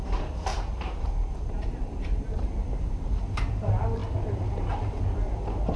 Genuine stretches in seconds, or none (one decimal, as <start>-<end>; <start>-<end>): 0.0-0.5; 2.0-2.6; 3.4-5.8

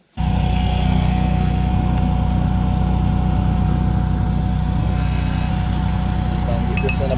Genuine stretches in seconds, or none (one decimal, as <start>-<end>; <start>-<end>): 0.0-0.5; 1.7-4.8; 5.5-7.2

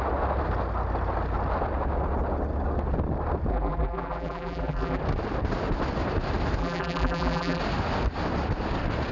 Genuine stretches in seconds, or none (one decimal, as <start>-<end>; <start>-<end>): 0.0-3.5; 5.0-6.6; 7.6-9.1

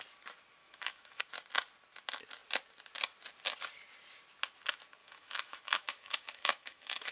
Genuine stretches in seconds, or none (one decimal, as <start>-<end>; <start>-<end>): 0.0-0.6; 1.2-5.0

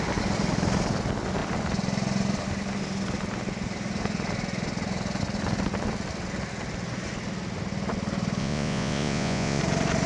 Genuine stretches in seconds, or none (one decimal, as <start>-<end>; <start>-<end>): 0.0-8.4; 9.6-10.1

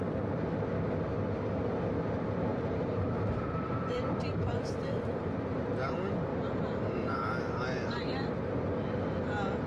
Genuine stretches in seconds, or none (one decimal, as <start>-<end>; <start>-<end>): 0.0-2.5; 5.0-6.3; 7.3-9.7

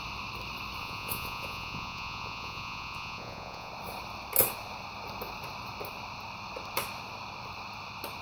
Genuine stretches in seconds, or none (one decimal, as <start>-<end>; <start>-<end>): 0.0-0.8; 3.7-8.2

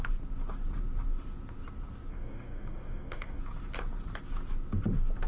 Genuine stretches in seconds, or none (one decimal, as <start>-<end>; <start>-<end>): 0.0-2.1; 3.4-5.3